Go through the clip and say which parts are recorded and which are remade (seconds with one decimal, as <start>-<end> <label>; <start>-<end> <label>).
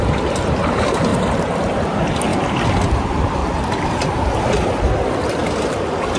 0.0-3.4 remade; 3.4-4.8 recorded; 4.8-5.4 remade; 5.4-6.2 recorded